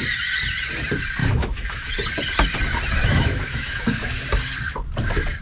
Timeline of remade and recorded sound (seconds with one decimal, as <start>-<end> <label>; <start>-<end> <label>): 0.0-1.2 recorded; 1.2-1.9 remade; 1.9-3.0 recorded; 3.0-4.2 remade; 4.2-5.4 recorded